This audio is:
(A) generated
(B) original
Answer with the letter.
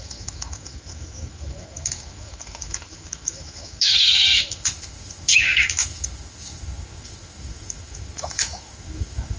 A